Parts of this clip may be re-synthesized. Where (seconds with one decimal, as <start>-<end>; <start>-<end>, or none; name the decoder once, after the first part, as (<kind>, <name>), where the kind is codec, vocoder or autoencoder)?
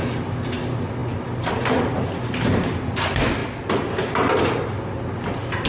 none